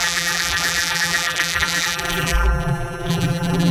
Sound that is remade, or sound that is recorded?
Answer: remade